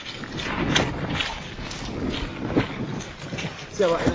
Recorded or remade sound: recorded